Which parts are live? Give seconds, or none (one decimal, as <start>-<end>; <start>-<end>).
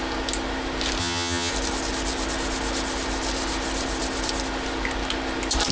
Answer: 0.0-1.0; 1.5-5.7